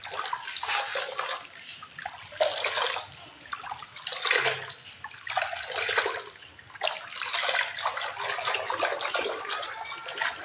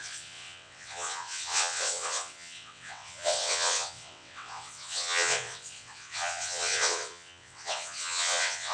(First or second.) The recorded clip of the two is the first